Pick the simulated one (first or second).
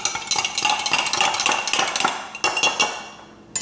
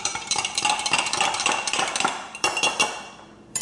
second